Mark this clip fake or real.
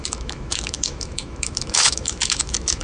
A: fake